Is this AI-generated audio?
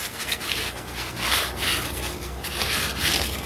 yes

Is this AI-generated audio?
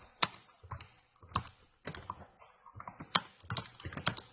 no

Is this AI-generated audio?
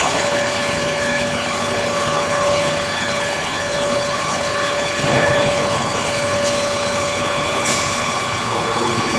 yes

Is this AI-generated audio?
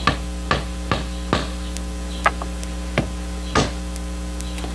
no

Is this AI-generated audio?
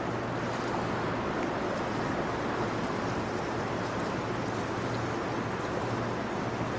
no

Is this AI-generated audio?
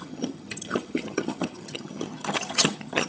yes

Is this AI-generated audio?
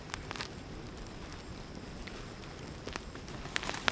no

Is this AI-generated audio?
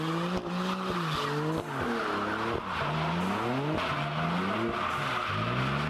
no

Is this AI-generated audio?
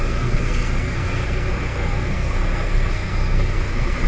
yes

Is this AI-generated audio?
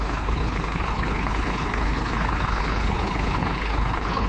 yes